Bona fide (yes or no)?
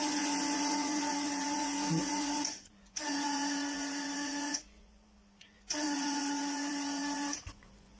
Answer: no